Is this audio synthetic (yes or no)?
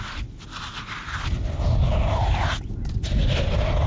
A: no